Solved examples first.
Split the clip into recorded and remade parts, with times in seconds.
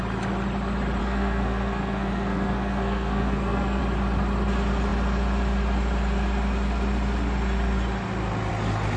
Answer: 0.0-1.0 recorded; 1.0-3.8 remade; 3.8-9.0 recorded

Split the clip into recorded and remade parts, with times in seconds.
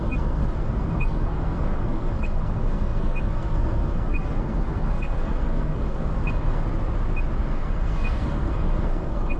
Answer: 0.0-6.7 remade; 6.7-7.4 recorded; 7.4-9.4 remade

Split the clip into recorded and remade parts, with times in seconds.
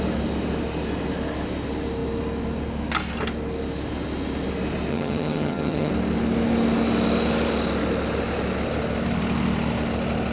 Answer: 0.0-4.9 recorded; 4.9-5.9 remade; 5.9-10.3 recorded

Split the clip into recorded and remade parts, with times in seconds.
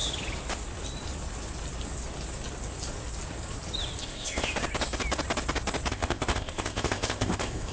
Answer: 0.0-4.0 recorded; 4.0-4.5 remade; 4.5-5.9 recorded; 5.9-7.7 remade